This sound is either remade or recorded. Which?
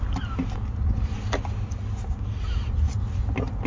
recorded